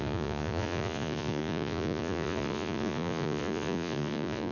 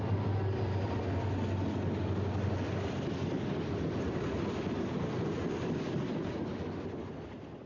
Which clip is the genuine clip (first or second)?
second